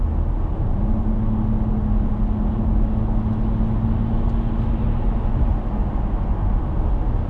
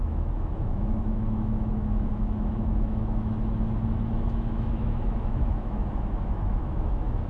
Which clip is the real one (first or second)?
first